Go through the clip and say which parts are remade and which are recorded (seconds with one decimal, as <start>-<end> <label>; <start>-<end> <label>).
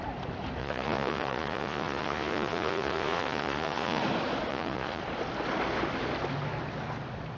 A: 0.0-0.6 recorded; 0.6-4.0 remade; 4.0-4.5 recorded; 4.5-5.0 remade; 5.0-7.4 recorded